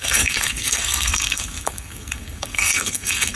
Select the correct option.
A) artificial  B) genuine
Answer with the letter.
A